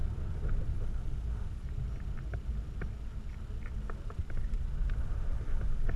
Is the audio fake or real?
real